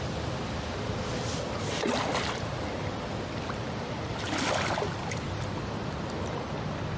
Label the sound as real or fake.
real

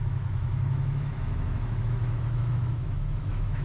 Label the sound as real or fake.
fake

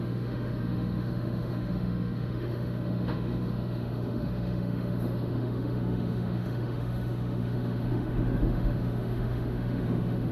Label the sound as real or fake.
fake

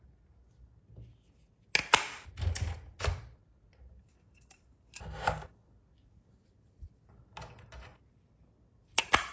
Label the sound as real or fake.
real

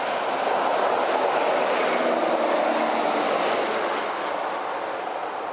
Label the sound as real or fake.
real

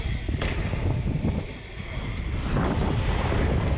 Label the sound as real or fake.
real